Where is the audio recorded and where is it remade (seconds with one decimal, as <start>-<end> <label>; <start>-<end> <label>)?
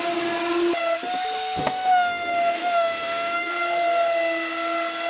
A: 0.0-1.6 recorded; 1.6-3.5 remade; 3.5-5.1 recorded